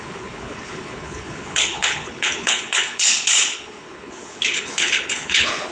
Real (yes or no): no